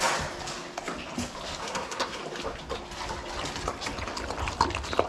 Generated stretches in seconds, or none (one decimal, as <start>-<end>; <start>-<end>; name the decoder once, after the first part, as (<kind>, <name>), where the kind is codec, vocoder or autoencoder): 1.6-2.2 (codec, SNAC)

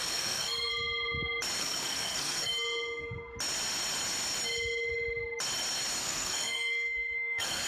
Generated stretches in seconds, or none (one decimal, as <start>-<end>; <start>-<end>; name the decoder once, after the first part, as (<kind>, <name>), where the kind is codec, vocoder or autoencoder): 0.0-0.7 (codec, SNAC); 1.6-2.5; 6.0-7.7

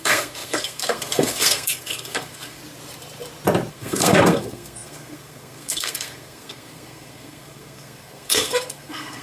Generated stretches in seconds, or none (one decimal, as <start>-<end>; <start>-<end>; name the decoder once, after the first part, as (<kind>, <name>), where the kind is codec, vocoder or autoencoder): 0.0-2.6 (codec, SNAC); 3.7-9.2